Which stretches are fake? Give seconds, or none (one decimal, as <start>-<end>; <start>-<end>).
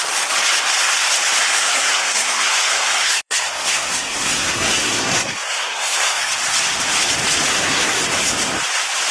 1.4-6.3; 7.5-8.0